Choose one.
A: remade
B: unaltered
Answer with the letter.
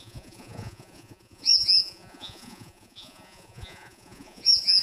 A